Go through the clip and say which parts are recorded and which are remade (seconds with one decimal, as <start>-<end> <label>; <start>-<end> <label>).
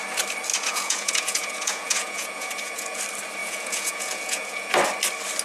0.0-0.5 recorded; 0.5-3.0 remade; 3.0-3.4 recorded; 3.4-4.7 remade; 4.7-5.4 recorded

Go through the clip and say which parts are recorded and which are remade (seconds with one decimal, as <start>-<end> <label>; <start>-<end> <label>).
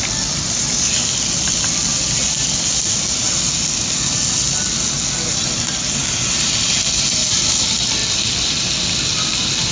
0.0-9.7 recorded